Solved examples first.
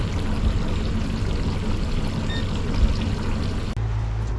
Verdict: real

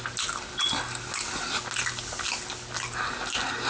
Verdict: real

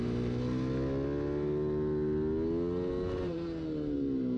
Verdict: real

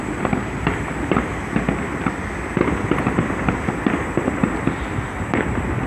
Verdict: real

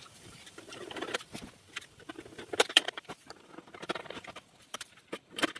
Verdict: fake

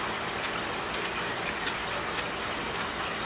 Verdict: real